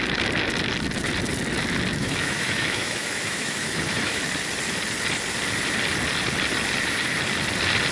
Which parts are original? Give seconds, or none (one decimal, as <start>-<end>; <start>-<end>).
0.0-2.0; 4.2-7.9